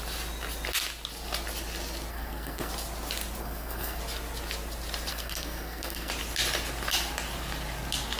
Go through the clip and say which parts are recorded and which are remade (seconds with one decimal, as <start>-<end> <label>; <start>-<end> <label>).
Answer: 0.0-2.1 recorded; 2.1-2.7 remade; 2.7-3.4 recorded; 3.4-4.0 remade; 4.0-5.1 recorded; 5.1-6.1 remade; 6.1-8.2 recorded